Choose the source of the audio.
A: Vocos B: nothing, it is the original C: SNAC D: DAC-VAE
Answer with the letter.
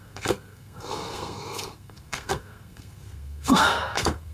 C